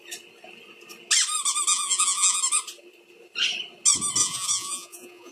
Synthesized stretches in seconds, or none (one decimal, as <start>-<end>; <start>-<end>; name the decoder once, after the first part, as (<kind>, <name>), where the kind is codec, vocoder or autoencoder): 1.7-2.4 (vocoder, Vocos); 4.2-5.3